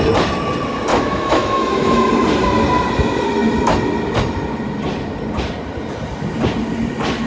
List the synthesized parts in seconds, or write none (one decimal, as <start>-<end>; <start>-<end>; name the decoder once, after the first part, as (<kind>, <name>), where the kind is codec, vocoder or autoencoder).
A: 0.9-2.1 (autoencoder, DAC-VAE)